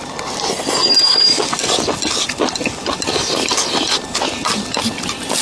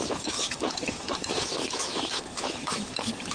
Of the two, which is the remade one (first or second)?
second